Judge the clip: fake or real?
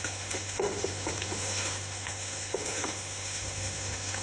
fake